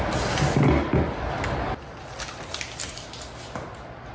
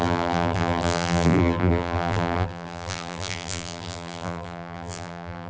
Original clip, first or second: first